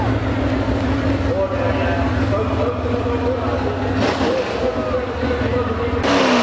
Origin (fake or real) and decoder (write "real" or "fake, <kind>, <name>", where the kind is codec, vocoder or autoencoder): real